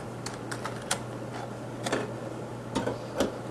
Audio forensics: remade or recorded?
recorded